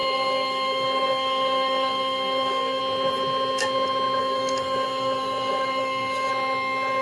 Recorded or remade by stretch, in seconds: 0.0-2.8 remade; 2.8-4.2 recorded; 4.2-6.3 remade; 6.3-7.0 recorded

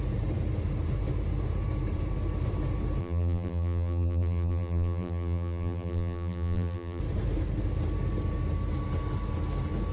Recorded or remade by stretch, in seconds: 0.0-3.0 recorded; 3.0-7.0 remade; 7.0-9.9 recorded

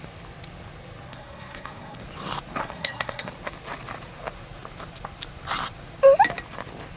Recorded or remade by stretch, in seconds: 0.0-1.1 recorded; 1.1-2.0 remade; 2.0-2.6 recorded; 2.6-3.3 remade; 3.3-7.0 recorded

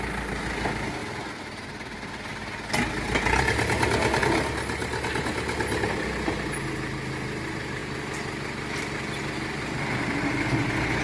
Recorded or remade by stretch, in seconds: 0.0-11.0 recorded

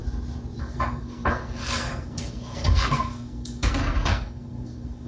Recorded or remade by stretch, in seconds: 0.0-0.6 recorded; 0.6-5.1 remade

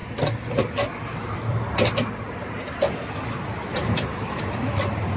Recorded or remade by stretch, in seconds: 0.0-1.2 recorded; 1.2-1.7 remade; 1.7-3.7 recorded; 3.7-5.2 remade

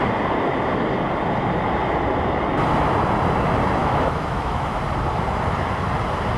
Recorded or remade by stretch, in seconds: 0.0-3.8 recorded; 3.8-4.8 remade; 4.8-6.4 recorded